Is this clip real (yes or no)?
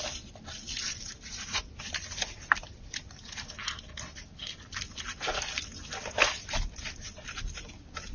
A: yes